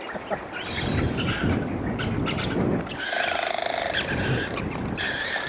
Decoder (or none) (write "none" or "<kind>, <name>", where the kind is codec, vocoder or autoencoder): none